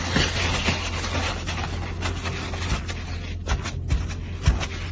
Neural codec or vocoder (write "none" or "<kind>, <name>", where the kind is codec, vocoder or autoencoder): none